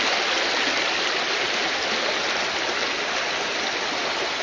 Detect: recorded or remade recorded